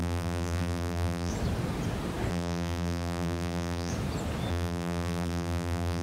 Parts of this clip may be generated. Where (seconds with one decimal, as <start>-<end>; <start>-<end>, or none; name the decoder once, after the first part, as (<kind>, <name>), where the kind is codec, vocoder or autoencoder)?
0.0-1.3 (vocoder, BigVGAN v2); 2.3-3.9; 4.5-6.0